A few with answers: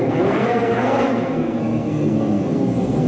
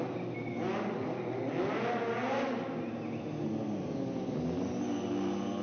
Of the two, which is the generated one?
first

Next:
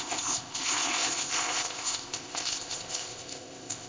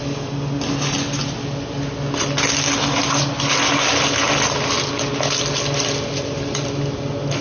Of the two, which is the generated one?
first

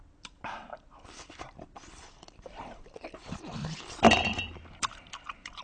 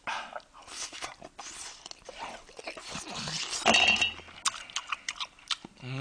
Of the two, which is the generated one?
first